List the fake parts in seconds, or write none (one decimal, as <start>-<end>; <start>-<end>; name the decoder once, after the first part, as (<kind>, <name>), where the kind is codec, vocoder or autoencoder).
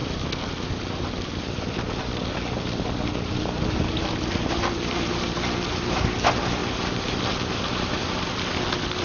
none